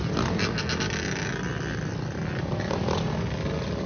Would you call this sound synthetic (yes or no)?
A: no